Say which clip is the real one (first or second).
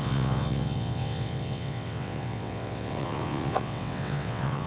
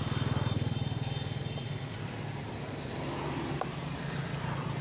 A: second